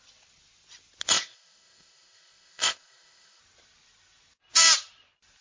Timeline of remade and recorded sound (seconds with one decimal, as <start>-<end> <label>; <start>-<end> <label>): 0.0-1.1 recorded; 1.1-3.4 remade; 3.4-5.4 recorded

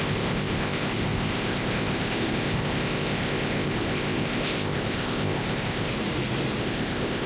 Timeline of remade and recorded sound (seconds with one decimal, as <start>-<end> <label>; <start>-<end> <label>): 0.0-5.9 remade; 5.9-6.6 recorded; 6.6-7.3 remade

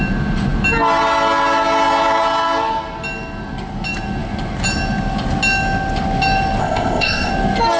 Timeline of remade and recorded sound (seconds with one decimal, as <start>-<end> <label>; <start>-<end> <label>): 0.0-6.6 recorded; 6.6-7.3 remade; 7.3-7.8 recorded

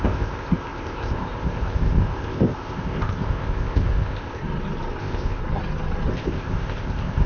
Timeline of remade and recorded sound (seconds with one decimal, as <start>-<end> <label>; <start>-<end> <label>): 0.0-4.4 remade; 4.4-5.0 recorded; 5.0-5.4 remade; 5.4-6.1 recorded; 6.1-7.3 remade

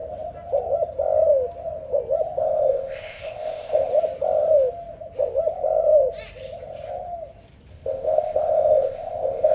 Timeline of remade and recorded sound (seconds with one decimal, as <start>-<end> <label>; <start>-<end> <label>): 0.0-2.4 recorded; 2.4-3.9 remade; 3.9-7.7 recorded; 7.7-9.5 remade

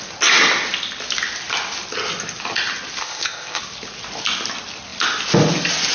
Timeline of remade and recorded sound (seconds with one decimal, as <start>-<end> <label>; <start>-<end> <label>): 0.0-3.0 recorded; 3.0-3.6 remade; 3.6-5.9 recorded

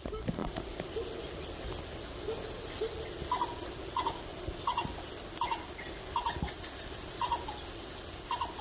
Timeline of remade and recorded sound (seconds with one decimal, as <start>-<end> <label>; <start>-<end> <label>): 0.0-8.6 recorded

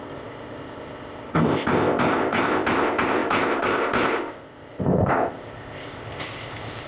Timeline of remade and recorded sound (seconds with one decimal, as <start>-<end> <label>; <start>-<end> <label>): 0.0-6.9 remade